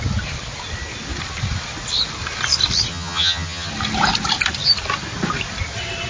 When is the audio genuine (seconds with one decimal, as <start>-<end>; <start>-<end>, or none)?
0.0-2.9; 3.7-6.1